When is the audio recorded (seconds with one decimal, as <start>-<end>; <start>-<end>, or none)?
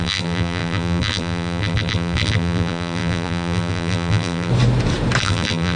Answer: 4.5-5.2